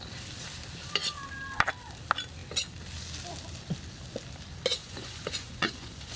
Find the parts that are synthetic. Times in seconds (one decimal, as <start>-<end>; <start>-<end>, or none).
4.8-6.2